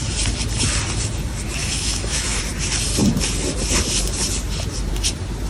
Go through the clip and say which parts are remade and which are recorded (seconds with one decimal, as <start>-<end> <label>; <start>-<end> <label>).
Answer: 0.0-1.6 recorded; 1.6-2.4 remade; 2.4-5.5 recorded